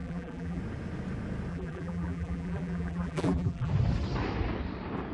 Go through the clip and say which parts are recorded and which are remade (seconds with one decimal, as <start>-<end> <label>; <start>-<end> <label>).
0.0-0.6 remade; 0.6-1.5 recorded; 1.5-3.7 remade; 3.7-5.1 recorded